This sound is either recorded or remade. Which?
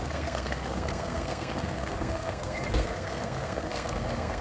remade